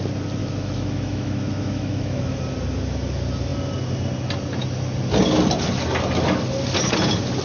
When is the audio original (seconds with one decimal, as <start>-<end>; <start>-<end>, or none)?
0.0-0.4; 2.4-7.4